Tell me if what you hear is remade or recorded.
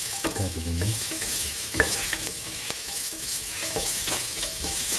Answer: remade